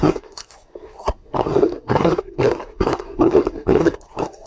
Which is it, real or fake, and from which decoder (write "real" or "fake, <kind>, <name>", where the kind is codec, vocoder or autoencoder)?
fake, codec, SNAC